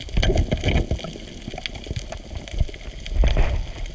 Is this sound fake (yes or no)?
no